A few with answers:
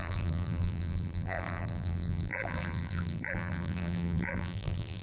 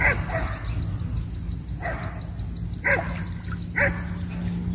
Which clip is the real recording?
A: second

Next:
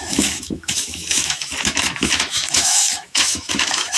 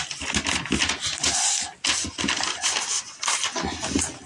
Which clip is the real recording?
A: second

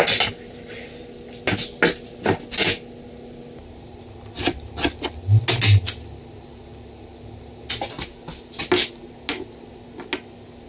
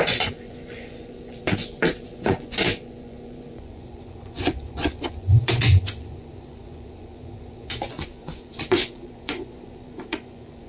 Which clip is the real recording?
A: first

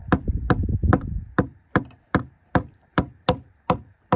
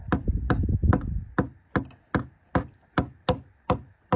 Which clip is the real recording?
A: second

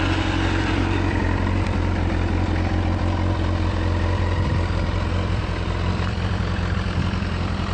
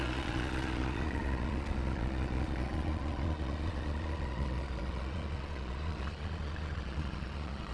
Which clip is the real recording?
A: first